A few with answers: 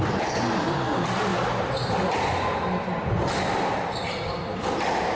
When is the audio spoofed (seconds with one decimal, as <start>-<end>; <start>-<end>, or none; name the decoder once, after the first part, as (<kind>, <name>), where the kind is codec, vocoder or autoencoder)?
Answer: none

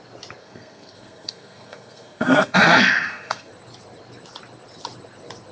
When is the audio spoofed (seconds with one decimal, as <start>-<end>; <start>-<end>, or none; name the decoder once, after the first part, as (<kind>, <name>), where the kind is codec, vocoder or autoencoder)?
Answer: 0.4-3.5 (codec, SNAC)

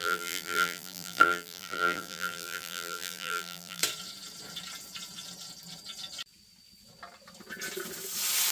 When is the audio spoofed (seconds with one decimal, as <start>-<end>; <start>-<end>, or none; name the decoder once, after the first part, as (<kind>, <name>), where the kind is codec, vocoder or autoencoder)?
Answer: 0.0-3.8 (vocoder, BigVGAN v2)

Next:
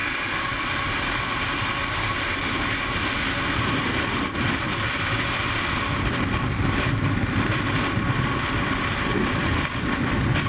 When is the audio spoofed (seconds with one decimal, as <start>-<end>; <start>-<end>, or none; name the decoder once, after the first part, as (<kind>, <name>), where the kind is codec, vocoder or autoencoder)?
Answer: 0.0-2.2 (vocoder, BigVGAN v2); 4.7-8.4; 9.1-9.8

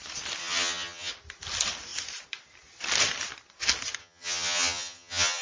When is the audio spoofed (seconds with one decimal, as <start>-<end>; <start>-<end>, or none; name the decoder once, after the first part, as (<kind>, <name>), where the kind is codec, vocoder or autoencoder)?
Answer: 0.4-1.1 (vocoder, HiFi-GAN); 4.0-5.4

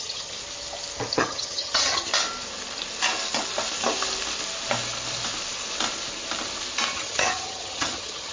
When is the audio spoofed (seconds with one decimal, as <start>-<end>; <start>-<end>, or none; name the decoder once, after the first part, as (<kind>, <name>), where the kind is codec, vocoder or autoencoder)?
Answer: 0.0-0.4 (vocoder, HiFi-GAN); 1.1-2.1; 6.9-8.3

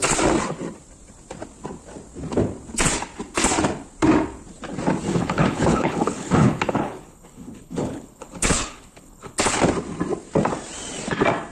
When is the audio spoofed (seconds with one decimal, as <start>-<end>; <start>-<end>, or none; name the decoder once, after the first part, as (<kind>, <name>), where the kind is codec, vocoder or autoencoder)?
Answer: 5.1-9.6 (codec, HILCodec)